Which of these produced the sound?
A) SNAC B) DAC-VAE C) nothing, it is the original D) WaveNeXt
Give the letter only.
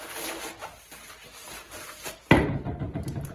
C